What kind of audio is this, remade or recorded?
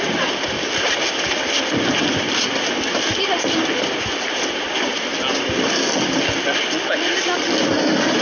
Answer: recorded